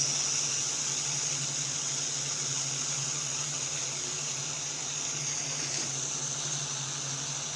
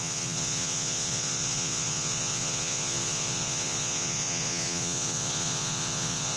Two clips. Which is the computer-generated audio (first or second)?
second